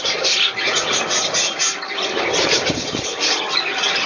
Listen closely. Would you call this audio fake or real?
real